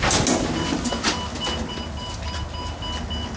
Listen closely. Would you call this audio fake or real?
real